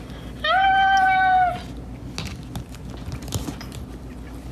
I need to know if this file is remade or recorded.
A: recorded